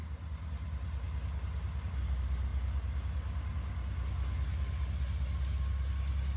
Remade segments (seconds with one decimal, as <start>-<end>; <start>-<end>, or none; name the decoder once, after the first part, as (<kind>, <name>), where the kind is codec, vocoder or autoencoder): none

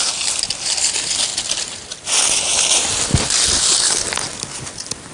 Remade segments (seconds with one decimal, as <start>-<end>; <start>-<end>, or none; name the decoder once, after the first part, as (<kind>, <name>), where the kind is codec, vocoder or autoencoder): none